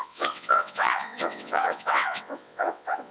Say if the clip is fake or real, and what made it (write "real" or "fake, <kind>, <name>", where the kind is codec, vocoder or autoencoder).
fake, vocoder, WaveNeXt